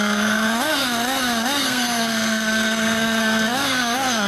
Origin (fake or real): fake